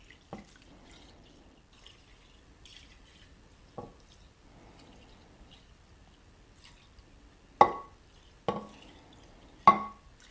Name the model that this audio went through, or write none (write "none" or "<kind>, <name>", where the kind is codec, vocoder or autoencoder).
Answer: none